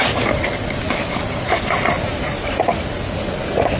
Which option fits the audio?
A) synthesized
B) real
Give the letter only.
B